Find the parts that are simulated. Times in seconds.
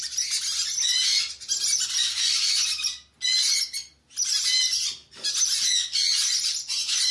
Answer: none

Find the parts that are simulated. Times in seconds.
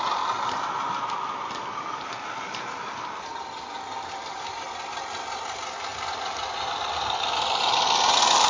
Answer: none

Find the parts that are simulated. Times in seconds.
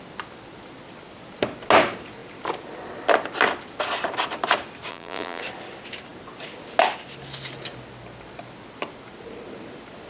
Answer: 4.9-5.4 (vocoder, BigVGAN v2)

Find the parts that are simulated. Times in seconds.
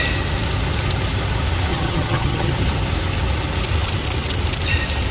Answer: 1.7-2.5 (vocoder, HiFi-GAN)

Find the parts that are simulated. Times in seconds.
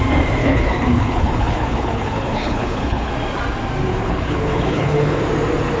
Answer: 0.4-3.1 (codec, HILCodec); 3.9-5.2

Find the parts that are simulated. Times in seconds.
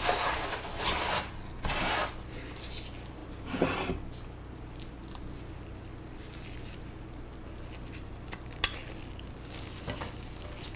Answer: none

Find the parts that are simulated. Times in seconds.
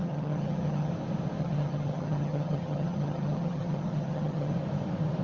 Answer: 0.0-0.9 (vocoder, HiFi-GAN); 1.4-4.5